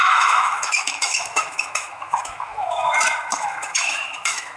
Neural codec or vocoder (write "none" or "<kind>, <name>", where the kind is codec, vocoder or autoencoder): autoencoder, DAC-VAE